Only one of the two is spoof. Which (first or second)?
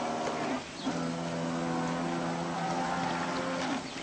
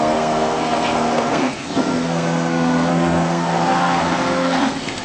second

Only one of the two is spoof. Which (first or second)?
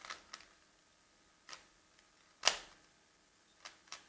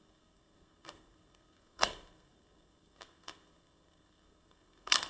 second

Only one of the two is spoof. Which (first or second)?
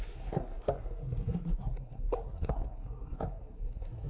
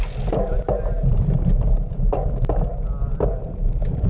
first